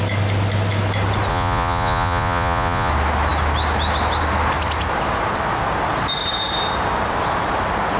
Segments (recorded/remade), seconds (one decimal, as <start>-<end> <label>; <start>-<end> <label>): 0.0-1.3 recorded; 1.3-2.9 remade; 2.9-8.0 recorded